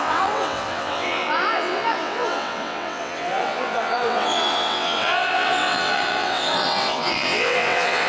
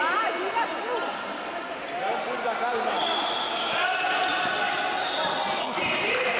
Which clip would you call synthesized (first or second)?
first